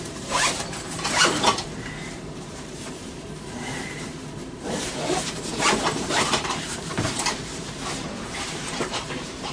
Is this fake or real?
fake